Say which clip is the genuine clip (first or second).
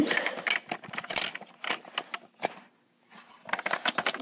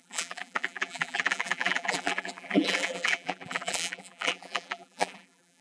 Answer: first